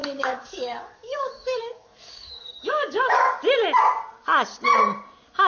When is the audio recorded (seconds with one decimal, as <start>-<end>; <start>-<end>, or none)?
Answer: 3.3-5.5